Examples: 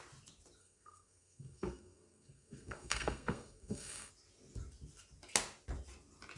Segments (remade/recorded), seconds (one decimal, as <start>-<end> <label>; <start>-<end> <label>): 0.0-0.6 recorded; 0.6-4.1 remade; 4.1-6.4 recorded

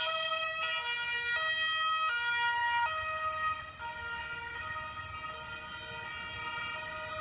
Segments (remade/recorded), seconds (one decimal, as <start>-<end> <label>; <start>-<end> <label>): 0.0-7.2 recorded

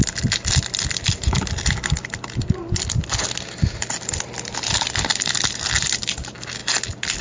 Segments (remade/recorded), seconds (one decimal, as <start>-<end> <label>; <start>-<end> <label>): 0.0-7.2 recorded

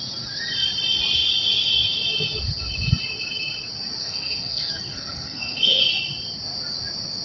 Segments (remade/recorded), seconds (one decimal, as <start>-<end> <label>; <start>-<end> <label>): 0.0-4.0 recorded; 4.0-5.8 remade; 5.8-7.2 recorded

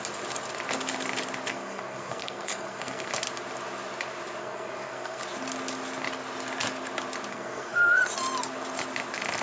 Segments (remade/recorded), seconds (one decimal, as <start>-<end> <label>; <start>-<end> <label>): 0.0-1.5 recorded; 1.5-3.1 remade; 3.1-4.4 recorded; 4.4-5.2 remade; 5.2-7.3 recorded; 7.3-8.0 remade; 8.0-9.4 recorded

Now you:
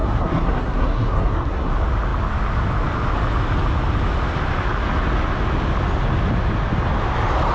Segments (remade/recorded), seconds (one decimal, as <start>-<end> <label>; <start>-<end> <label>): 0.0-1.7 remade; 1.7-7.5 recorded